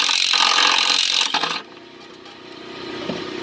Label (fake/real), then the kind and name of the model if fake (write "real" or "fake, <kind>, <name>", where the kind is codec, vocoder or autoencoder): real